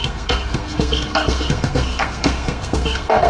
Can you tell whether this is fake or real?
fake